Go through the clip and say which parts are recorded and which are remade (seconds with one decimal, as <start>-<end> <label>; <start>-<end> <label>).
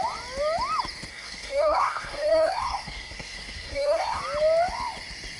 0.0-1.1 recorded; 1.1-4.2 remade; 4.2-5.4 recorded